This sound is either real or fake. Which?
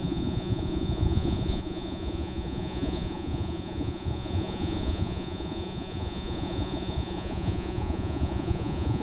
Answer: fake